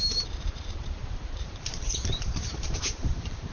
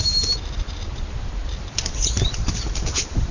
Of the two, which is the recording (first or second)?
second